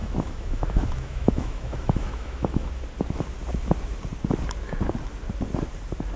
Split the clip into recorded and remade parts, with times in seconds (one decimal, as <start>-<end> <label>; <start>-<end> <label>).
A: 0.0-2.7 remade; 2.7-6.2 recorded